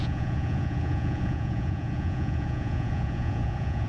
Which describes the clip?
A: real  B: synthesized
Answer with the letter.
B